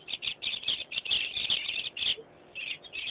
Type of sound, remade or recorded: remade